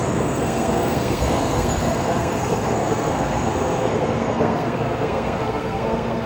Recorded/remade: remade